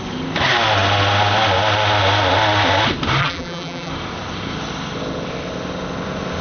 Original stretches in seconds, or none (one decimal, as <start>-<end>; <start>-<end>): 0.0-3.2; 3.9-6.4